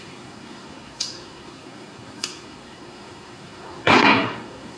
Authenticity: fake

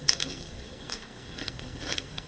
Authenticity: fake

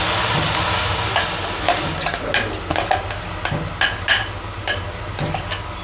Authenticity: real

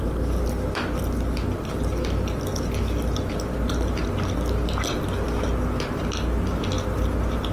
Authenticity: real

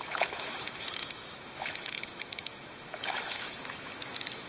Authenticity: fake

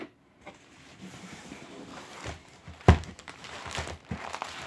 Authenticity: real